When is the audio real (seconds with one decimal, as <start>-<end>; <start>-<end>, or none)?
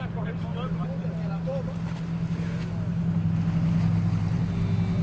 0.0-5.0